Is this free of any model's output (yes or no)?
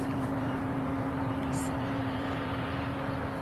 no